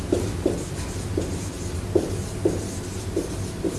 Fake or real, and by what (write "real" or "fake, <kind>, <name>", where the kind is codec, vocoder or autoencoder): real